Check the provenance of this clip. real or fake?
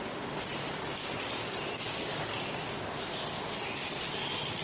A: real